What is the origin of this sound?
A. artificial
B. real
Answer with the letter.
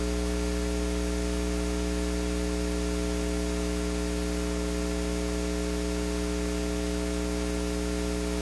B